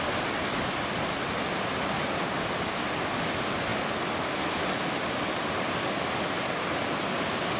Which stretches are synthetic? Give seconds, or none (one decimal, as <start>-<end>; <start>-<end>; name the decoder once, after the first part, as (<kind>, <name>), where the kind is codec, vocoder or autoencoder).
none